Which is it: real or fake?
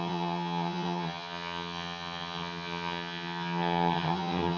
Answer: fake